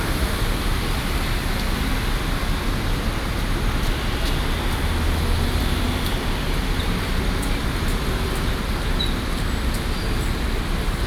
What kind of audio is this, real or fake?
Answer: real